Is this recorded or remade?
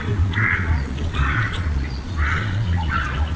remade